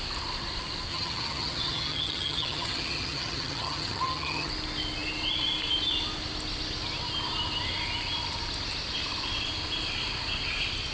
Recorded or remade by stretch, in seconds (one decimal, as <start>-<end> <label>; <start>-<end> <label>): 0.0-0.9 recorded; 0.9-4.5 remade; 4.5-10.9 recorded